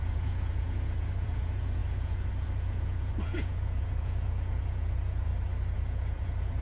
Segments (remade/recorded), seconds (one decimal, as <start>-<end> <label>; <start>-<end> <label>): 0.0-5.3 remade; 5.3-5.8 recorded; 5.8-6.6 remade